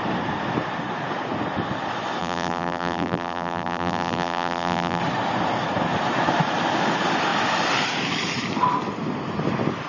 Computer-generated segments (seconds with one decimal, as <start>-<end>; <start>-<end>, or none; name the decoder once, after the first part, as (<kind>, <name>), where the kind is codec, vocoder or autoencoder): 2.2-5.0 (vocoder, BigVGAN v2)